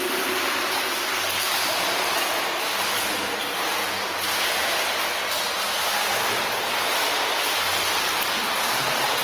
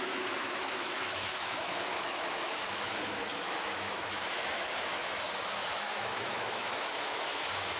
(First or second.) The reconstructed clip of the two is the second